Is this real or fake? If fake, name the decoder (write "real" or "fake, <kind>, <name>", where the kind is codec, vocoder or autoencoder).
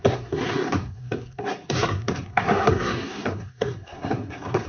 fake, codec, SNAC